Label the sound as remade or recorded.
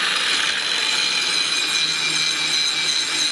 recorded